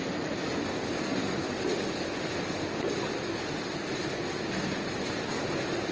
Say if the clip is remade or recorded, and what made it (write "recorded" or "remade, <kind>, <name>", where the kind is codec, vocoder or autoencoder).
recorded